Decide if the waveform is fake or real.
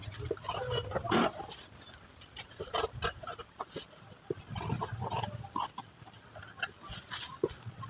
real